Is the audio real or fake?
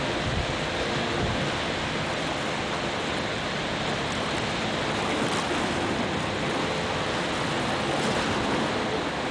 real